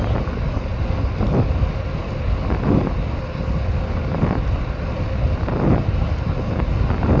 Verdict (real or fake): real